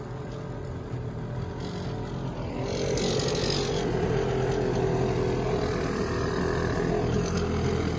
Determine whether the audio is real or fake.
real